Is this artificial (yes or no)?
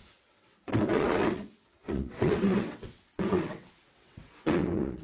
yes